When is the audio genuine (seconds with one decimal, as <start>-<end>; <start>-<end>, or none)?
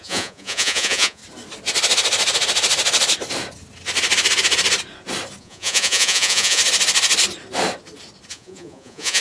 1.2-5.4; 6.6-8.3